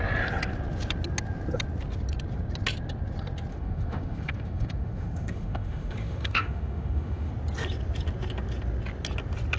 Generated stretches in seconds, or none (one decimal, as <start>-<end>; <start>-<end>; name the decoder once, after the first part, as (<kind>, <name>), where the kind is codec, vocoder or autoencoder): 3.5-7.3 (autoencoder, DAC-VAE)